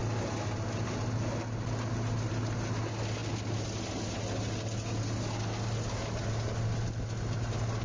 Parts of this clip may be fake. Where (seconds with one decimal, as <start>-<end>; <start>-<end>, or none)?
none